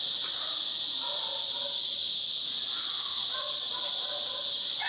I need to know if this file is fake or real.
real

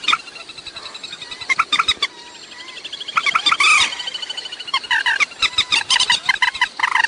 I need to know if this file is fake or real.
real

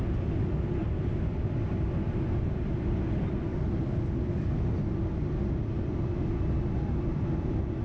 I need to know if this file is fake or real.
real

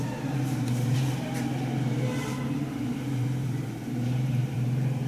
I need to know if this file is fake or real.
fake